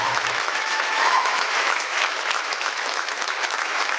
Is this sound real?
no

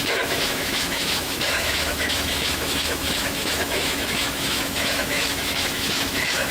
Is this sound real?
no